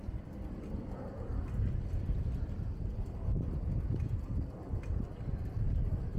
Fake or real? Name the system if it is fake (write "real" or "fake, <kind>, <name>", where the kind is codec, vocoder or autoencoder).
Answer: real